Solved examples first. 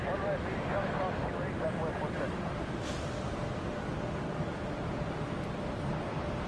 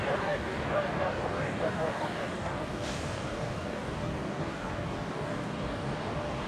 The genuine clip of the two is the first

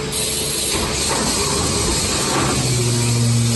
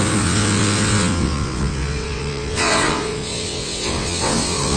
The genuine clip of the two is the first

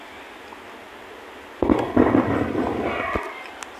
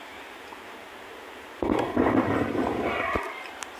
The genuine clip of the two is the first